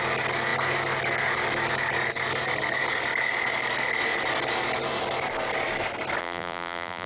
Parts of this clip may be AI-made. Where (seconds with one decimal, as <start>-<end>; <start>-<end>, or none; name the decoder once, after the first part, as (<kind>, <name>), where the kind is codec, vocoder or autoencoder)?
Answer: 6.2-7.1 (vocoder, BigVGAN v2)